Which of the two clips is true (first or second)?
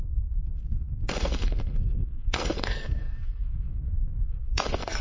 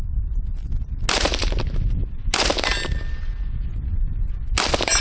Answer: second